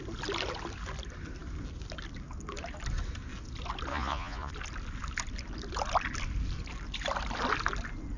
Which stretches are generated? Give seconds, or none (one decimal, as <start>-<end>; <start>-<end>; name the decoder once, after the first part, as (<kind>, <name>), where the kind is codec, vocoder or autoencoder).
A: 3.9-4.5 (vocoder, Vocos)